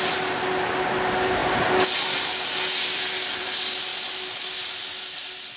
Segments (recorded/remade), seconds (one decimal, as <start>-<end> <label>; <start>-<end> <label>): 0.0-5.6 recorded